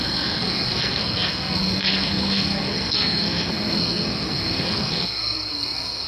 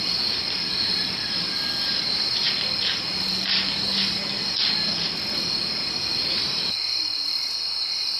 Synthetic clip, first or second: first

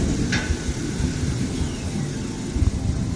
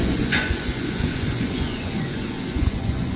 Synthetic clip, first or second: second